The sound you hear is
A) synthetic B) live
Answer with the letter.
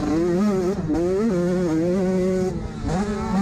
B